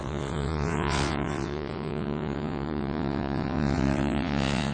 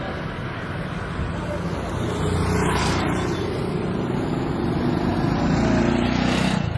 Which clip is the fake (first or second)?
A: first